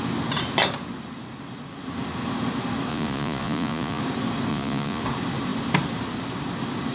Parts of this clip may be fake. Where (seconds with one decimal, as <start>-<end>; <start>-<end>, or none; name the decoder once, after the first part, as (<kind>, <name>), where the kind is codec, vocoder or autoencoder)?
2.9-4.0 (vocoder, Vocos); 4.5-5.0

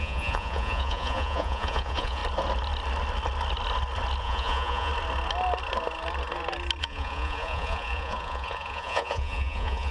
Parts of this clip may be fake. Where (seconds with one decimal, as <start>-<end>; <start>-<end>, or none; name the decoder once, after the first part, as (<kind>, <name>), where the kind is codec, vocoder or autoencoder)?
0.0-2.2 (vocoder, Vocos); 4.2-4.9; 6.8-9.9

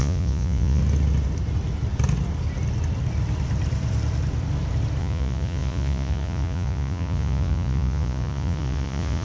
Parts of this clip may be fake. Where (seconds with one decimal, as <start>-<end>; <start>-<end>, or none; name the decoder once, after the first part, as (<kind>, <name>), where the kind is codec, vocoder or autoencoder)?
0.0-0.8 (vocoder, Vocos); 5.0-9.2

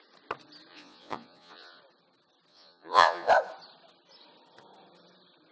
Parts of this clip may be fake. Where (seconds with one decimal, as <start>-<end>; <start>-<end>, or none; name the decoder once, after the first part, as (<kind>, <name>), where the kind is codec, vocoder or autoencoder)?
0.7-1.8 (vocoder, Vocos); 2.5-3.3

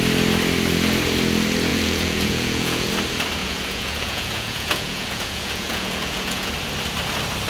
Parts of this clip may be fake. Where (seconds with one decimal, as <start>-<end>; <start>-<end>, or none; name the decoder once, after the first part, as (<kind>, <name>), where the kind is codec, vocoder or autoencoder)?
1.7-2.9 (vocoder, Vocos); 3.4-6.5

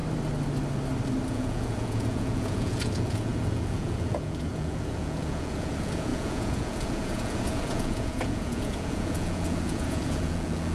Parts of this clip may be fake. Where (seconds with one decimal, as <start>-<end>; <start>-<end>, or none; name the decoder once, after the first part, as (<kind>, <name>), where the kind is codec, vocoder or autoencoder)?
1.3-10.7 (vocoder, Vocos)